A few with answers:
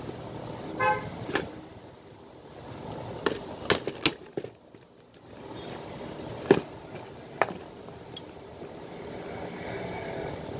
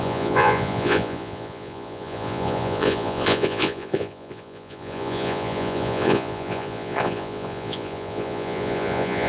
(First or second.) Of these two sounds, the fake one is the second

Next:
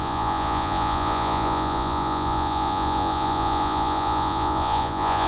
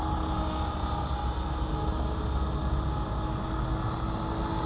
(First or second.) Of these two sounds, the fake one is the first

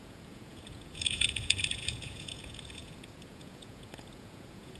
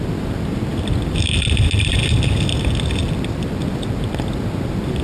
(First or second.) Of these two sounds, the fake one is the first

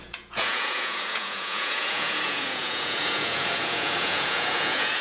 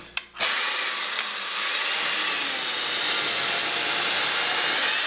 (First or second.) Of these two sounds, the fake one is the first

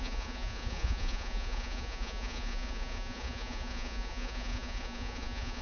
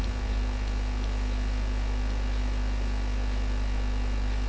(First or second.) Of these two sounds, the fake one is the first